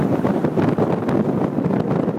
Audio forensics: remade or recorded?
recorded